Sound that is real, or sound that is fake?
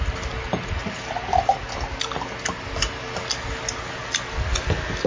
real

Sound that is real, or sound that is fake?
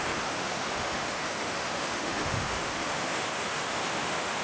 fake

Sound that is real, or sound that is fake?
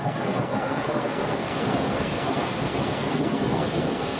fake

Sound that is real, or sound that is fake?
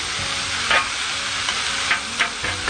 real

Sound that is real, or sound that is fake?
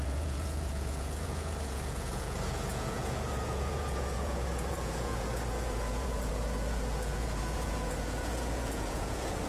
fake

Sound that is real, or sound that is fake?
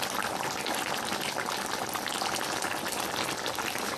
real